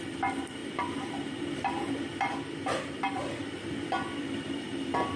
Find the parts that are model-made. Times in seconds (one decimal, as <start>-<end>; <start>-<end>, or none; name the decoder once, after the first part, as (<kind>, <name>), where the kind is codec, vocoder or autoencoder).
0.0-5.2 (vocoder, BigVGAN v2)